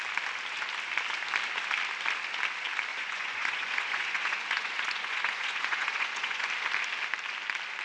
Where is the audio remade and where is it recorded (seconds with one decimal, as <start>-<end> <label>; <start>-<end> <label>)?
0.0-2.9 recorded; 2.9-6.5 remade; 6.5-7.8 recorded